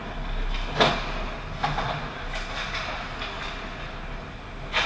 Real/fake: real